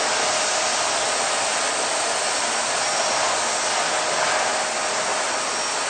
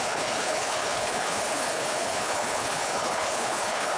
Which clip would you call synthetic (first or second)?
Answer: second